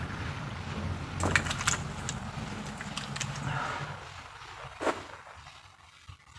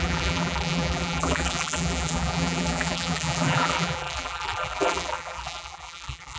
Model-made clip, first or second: second